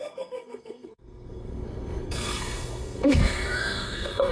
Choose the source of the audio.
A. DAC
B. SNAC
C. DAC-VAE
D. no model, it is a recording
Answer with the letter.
B